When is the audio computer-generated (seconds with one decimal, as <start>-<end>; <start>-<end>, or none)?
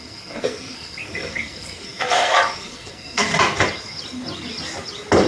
0.0-3.3